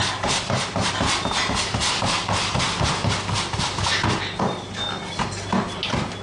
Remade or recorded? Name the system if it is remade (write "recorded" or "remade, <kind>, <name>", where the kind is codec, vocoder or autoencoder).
recorded